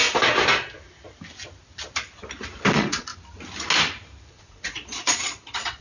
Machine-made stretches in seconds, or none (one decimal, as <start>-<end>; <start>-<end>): 2.7-3.1; 4.3-5.8